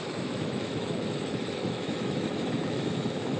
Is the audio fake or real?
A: fake